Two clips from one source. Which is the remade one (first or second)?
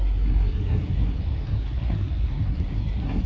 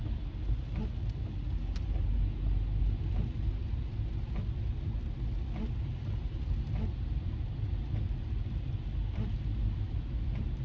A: first